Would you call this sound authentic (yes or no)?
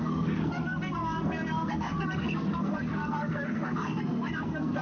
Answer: no